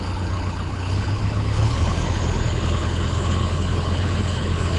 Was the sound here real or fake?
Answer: fake